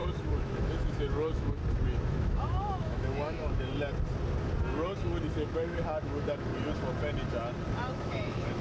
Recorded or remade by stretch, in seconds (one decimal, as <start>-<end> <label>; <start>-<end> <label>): 0.0-1.6 remade; 1.6-2.1 recorded; 2.1-3.7 remade; 3.7-5.3 recorded; 5.3-6.5 remade; 6.5-7.9 recorded; 7.9-8.6 remade